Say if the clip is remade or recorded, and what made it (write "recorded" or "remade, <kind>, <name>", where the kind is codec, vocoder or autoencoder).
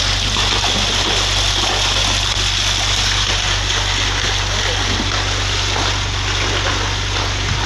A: recorded